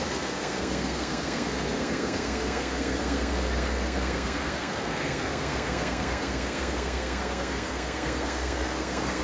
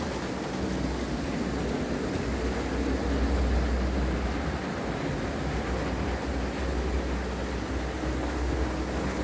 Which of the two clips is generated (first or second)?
first